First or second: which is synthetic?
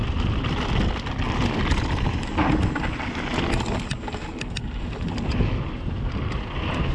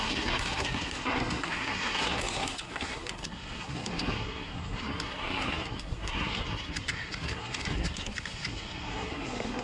second